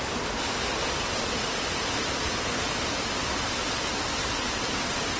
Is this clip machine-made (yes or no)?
no